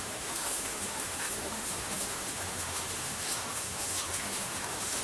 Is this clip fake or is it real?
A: fake